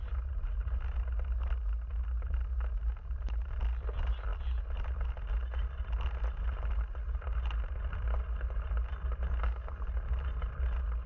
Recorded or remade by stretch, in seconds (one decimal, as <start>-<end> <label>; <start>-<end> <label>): 0.0-11.1 recorded